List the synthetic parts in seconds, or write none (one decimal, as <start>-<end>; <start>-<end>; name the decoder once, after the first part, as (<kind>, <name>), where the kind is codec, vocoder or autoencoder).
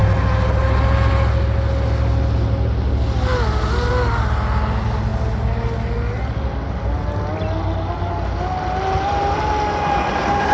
none